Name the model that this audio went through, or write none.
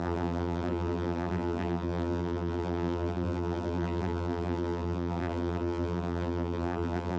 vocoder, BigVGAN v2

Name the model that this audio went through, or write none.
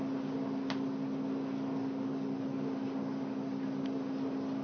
none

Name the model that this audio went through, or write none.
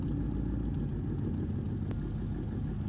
none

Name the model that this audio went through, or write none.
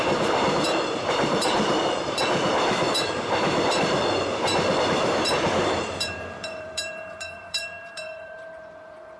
vocoder, BigVGAN v2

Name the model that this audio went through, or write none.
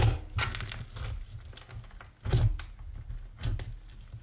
none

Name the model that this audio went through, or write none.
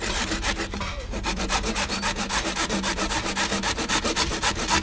vocoder, BigVGAN v2